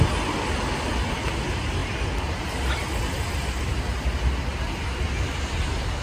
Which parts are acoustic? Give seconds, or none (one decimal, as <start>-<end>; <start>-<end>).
0.0-6.0